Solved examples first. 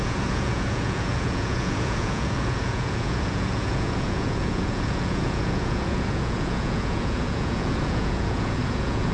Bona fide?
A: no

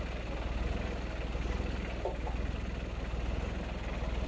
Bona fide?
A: yes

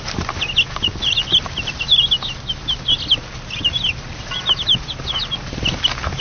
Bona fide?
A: yes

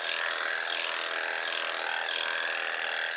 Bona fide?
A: yes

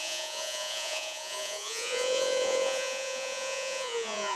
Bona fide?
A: no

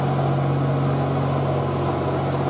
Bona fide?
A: yes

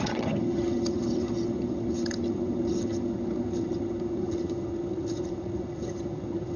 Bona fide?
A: no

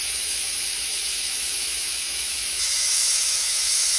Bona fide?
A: no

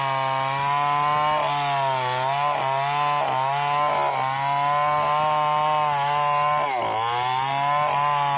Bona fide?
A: yes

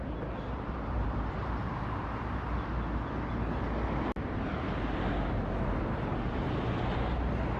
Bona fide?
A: yes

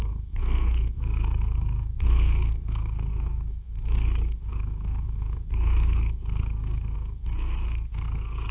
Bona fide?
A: no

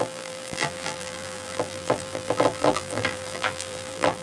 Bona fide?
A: no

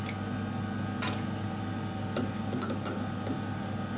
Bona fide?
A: yes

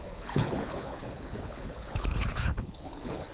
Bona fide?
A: no